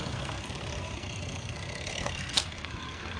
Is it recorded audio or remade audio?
remade